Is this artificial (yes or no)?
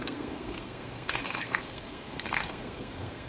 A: yes